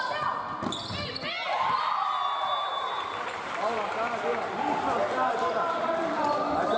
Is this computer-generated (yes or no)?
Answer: no